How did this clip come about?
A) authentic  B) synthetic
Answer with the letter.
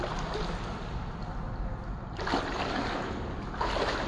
A